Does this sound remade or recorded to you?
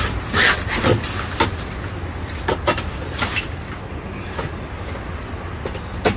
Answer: recorded